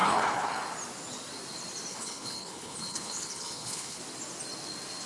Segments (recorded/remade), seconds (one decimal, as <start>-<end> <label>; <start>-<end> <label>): 0.0-0.6 remade; 0.6-1.9 recorded; 1.9-4.0 remade; 4.0-5.1 recorded